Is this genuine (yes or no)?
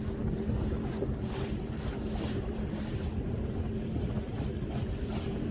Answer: yes